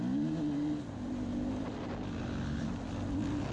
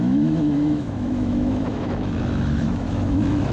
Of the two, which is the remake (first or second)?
second